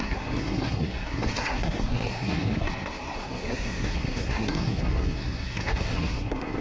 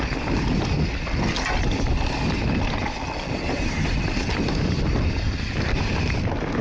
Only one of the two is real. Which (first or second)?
second